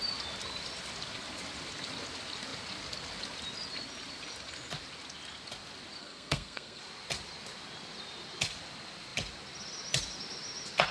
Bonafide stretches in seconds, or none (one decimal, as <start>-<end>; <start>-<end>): 0.0-6.0; 6.8-10.9